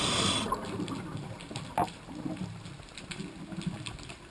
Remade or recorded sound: recorded